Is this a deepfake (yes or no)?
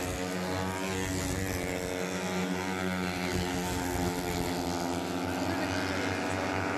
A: no